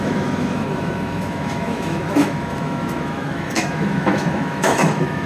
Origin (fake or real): fake